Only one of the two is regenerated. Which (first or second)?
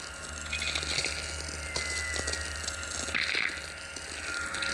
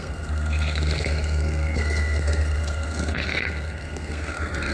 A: second